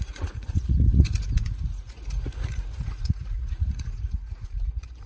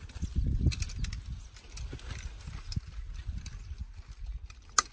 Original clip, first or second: second